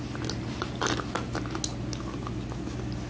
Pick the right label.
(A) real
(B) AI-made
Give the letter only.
A